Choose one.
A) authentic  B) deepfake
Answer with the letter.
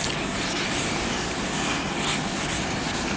A